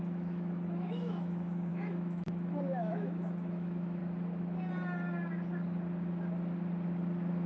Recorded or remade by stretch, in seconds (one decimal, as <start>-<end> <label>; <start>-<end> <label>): 0.0-4.0 remade; 4.0-7.5 recorded